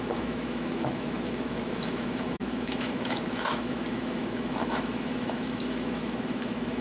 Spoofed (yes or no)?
yes